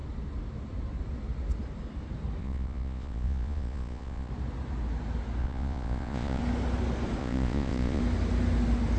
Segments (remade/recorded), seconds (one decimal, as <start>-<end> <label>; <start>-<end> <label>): 0.0-2.4 recorded; 2.4-4.3 remade; 4.3-5.4 recorded; 5.4-6.4 remade; 6.4-7.2 recorded; 7.2-8.0 remade; 8.0-9.0 recorded